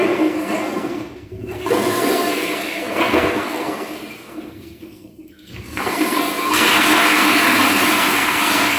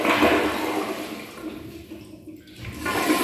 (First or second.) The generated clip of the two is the first